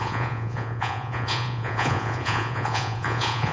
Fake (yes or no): yes